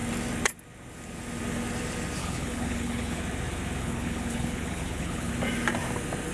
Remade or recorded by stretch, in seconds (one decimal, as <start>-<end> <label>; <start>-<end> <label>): 0.0-2.2 recorded; 2.2-3.2 remade; 3.2-3.8 recorded; 3.8-5.3 remade; 5.3-6.3 recorded